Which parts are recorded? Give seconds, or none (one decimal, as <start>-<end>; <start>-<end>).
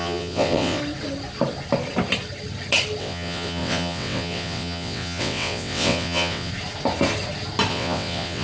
0.8-3.0; 6.5-7.7